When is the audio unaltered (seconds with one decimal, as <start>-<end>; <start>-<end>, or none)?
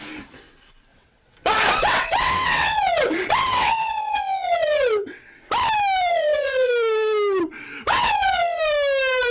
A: 0.0-0.9; 5.5-6.1; 6.7-7.9; 8.6-9.3